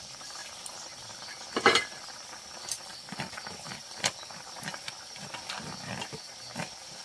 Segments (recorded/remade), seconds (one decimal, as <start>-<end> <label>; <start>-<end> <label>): 0.0-7.0 remade